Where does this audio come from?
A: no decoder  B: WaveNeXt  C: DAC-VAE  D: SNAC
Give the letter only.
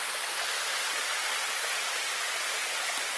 A